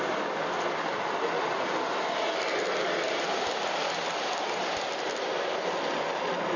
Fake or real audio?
real